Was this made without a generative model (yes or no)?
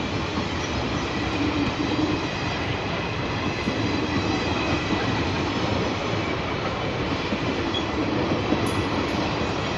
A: yes